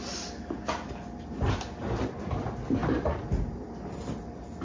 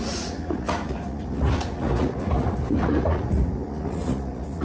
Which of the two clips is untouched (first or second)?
first